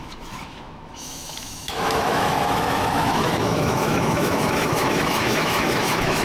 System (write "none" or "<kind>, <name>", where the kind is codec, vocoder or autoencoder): autoencoder, DAC-VAE